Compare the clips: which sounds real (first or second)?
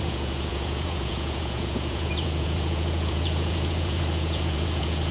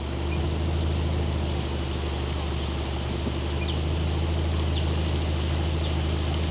second